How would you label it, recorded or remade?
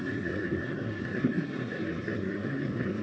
remade